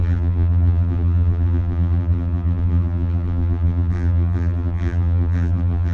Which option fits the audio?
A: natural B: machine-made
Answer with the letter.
B